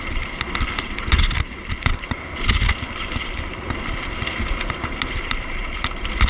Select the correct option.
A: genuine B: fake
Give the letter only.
B